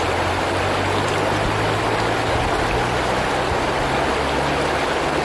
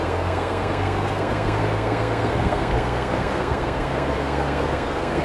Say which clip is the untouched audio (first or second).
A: first